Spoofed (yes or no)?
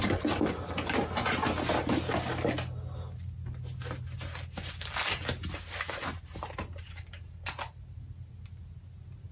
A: no